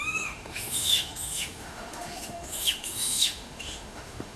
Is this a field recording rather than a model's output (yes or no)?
no